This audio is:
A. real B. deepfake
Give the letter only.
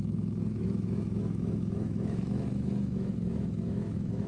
B